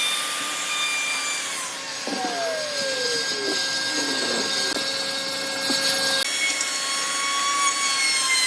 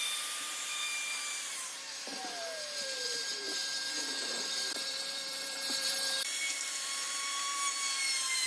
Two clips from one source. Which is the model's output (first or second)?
second